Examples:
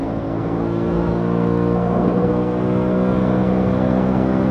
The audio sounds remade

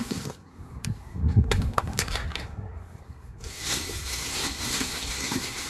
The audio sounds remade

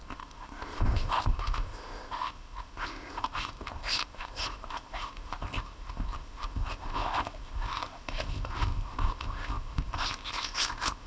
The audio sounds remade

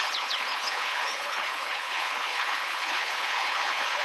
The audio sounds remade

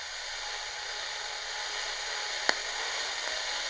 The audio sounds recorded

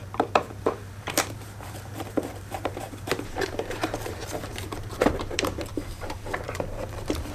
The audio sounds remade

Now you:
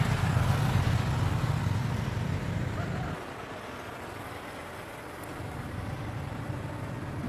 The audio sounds recorded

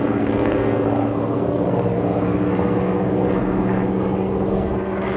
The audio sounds remade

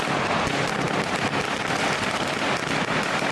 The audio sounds recorded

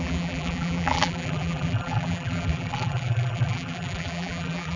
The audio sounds remade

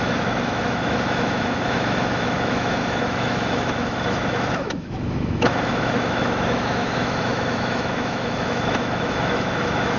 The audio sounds remade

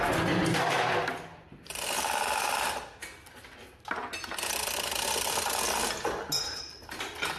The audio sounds recorded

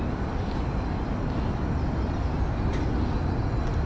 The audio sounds recorded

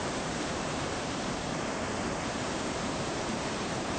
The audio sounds remade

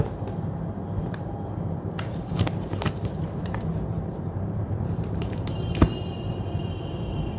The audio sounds remade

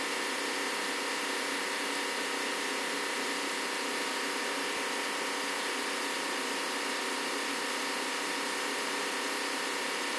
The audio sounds recorded